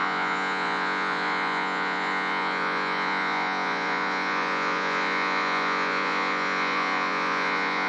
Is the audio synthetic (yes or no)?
yes